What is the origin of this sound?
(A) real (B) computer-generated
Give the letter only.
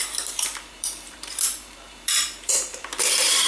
B